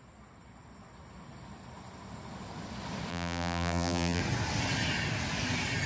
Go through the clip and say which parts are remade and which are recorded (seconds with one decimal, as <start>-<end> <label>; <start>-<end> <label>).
0.0-3.1 recorded; 3.1-4.2 remade; 4.2-5.9 recorded